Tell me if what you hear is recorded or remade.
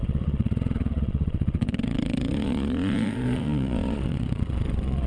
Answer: remade